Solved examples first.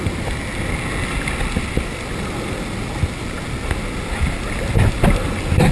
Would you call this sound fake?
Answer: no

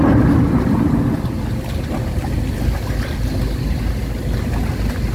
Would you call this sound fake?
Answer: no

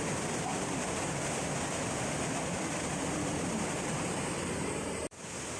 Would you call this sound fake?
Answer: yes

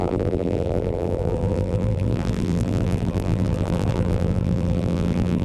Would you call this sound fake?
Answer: yes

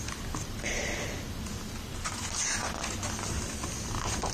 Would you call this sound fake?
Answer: no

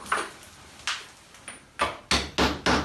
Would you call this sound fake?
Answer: no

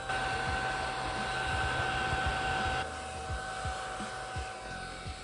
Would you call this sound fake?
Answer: no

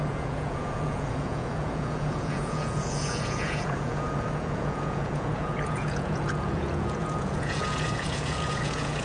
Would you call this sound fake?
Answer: yes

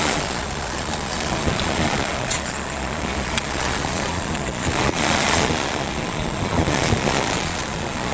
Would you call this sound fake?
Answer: yes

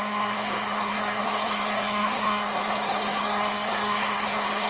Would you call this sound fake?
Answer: yes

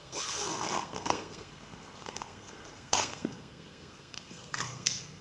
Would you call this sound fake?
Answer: yes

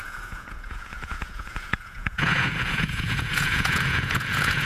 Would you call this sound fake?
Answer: yes